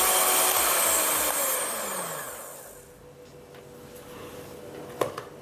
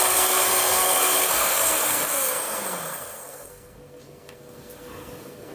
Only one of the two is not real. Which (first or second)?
second